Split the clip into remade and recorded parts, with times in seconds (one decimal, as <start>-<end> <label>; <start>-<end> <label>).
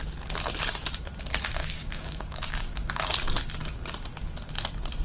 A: 0.0-1.6 recorded; 1.6-3.0 remade; 3.0-5.0 recorded